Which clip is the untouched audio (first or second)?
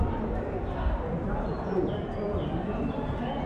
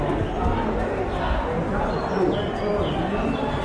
second